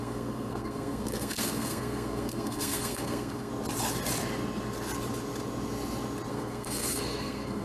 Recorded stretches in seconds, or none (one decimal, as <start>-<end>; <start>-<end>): 3.5-6.3